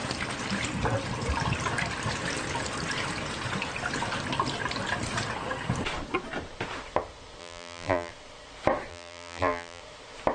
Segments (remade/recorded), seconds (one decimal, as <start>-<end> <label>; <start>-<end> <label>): 0.0-7.4 recorded; 7.4-8.1 remade; 8.1-8.9 recorded; 8.9-9.8 remade; 9.8-10.3 recorded